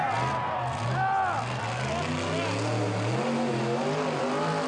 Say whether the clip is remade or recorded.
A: recorded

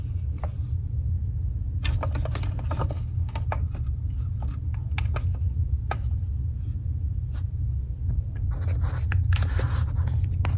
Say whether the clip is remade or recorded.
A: recorded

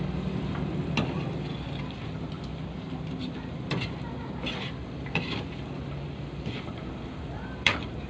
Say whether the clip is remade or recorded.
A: remade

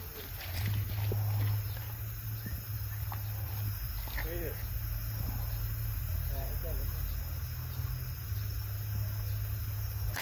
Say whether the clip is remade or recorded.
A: recorded